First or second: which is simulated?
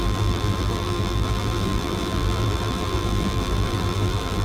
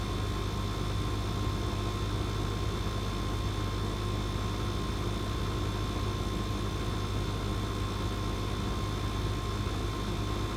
first